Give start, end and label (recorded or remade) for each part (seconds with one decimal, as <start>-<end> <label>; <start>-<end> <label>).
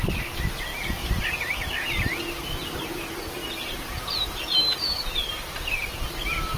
0.0-6.6 recorded